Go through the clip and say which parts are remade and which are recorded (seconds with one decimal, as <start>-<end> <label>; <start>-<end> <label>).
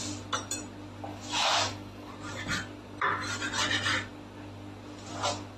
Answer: 0.0-1.1 recorded; 1.1-2.1 remade; 2.1-5.6 recorded